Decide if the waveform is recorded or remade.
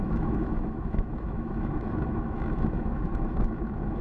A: remade